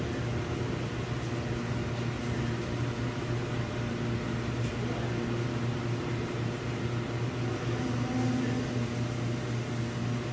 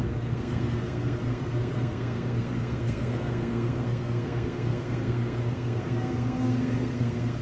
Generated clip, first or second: second